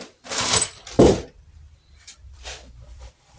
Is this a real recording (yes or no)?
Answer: no